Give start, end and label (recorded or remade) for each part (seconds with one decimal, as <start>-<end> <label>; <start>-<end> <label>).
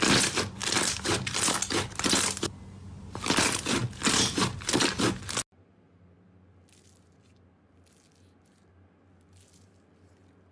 0.0-10.5 recorded